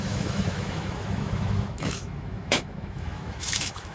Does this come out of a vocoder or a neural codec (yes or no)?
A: yes